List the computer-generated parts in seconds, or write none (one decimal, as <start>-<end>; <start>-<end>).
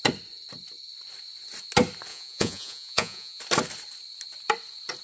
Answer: 2.1-3.4